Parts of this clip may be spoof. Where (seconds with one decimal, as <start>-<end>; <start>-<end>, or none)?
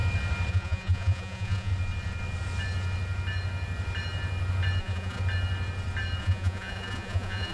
0.5-1.7; 4.8-5.2; 6.2-7.5